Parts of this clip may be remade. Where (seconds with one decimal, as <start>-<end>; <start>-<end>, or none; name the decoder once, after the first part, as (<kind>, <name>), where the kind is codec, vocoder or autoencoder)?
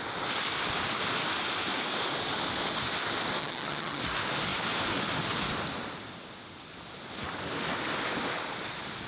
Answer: 3.4-4.0 (vocoder, HiFi-GAN)